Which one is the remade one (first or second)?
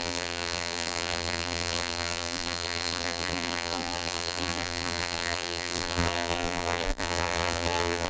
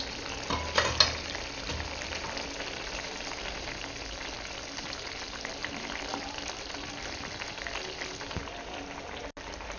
first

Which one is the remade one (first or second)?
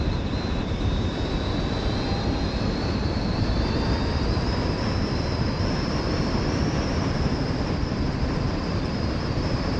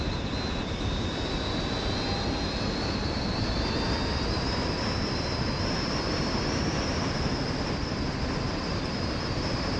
first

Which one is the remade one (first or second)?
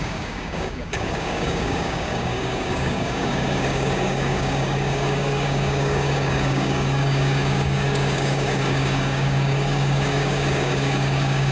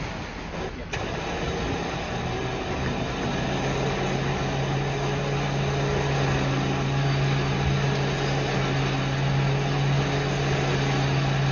first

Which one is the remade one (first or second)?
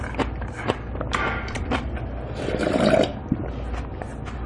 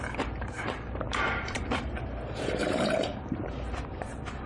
second